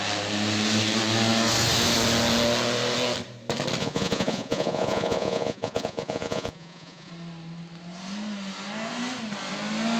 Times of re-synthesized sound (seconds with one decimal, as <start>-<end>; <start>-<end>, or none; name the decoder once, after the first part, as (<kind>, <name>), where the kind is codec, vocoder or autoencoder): 3.8-7.1 (vocoder, Vocos)